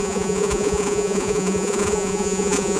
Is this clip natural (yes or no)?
no